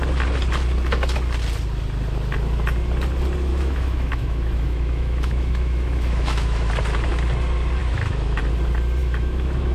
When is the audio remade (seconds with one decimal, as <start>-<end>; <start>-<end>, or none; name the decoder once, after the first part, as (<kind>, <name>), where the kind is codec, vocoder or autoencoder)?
3.5-6.7 (autoencoder, DAC-VAE); 7.8-8.4; 9.0-9.7